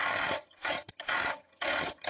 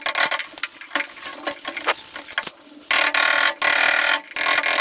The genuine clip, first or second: second